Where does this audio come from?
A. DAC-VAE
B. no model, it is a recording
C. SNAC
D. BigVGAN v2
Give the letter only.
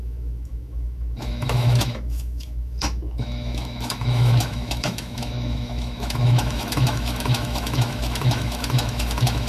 A